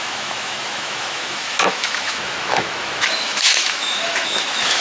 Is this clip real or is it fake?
fake